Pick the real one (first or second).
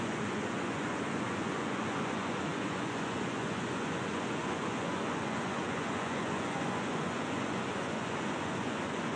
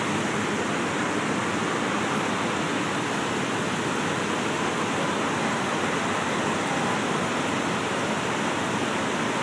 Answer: second